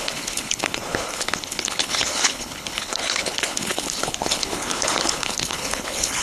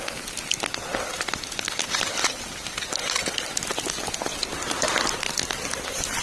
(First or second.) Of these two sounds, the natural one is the second